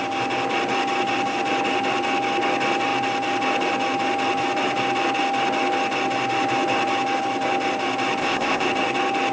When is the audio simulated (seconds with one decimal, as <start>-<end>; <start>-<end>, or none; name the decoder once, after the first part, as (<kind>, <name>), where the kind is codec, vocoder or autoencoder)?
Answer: 8.2-8.7 (codec, ZipCodec)